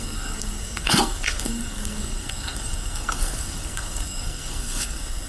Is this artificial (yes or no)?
yes